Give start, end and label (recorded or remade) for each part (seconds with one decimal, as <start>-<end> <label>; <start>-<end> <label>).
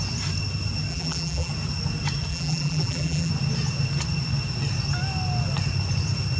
0.0-0.9 recorded; 0.9-1.5 remade; 1.5-2.3 recorded; 2.3-3.3 remade; 3.3-6.4 recorded